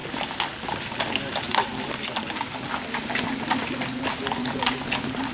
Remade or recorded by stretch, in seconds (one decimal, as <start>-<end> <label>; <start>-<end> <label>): 0.0-5.3 recorded